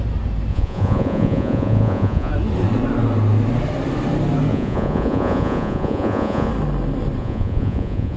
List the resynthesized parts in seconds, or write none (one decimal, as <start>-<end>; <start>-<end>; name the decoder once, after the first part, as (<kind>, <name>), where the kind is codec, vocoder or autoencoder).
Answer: 0.5-2.3 (vocoder, Vocos); 4.5-6.5; 7.2-8.2